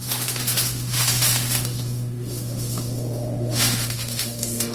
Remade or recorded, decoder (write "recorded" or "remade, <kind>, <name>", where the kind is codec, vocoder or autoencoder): remade, autoencoder, DAC-VAE